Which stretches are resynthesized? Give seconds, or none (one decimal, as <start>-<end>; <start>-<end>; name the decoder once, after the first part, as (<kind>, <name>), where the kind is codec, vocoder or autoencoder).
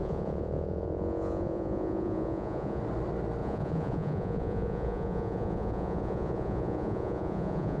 0.0-2.8 (vocoder, Vocos); 3.4-7.8